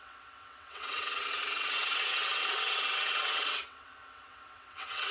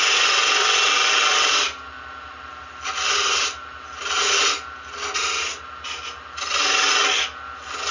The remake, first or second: first